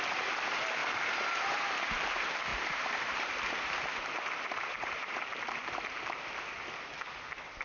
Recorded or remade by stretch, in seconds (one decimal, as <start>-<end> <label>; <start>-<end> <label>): 0.0-2.5 recorded; 2.5-5.6 remade; 5.6-7.6 recorded